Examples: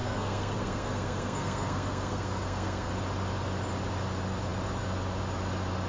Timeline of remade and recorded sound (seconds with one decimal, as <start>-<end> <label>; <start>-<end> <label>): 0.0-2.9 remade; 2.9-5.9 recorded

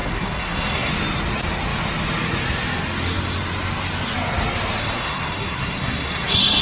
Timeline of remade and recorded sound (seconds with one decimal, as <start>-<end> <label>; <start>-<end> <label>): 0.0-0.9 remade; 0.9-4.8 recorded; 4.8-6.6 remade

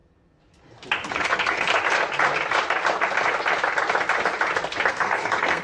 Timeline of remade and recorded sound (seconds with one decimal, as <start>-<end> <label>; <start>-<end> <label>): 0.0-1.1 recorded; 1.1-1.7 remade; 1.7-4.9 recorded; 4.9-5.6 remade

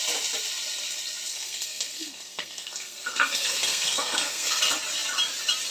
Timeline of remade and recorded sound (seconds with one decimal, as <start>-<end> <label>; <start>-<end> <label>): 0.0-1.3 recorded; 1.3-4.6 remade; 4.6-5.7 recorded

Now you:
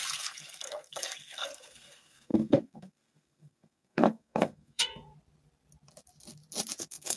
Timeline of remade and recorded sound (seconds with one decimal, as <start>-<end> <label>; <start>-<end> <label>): 0.0-4.9 remade; 4.9-6.8 recorded; 6.8-7.2 remade

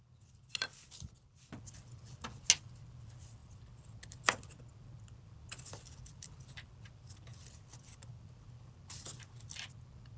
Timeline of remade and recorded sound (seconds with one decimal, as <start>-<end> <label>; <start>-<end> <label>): 0.0-10.2 recorded

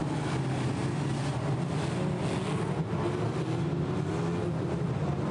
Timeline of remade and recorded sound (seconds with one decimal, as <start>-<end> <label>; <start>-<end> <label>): 0.0-5.3 recorded

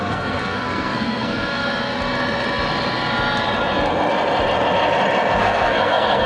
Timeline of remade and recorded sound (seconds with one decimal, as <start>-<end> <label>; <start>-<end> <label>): 0.0-1.6 remade; 1.6-5.4 recorded; 5.4-6.3 remade